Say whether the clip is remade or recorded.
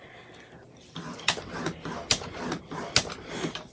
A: recorded